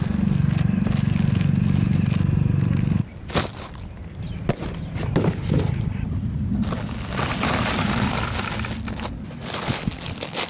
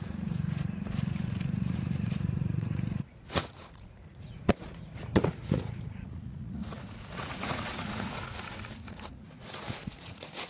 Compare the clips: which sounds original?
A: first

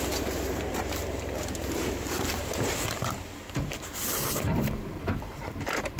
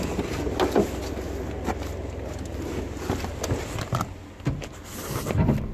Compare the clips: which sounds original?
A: second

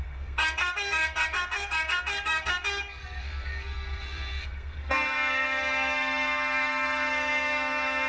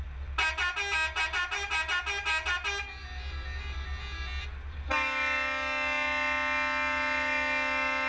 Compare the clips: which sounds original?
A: second